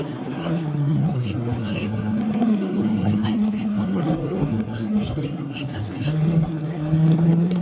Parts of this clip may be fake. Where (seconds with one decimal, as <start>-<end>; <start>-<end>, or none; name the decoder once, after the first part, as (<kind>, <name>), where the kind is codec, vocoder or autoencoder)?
0.0-7.6 (codec, SNAC)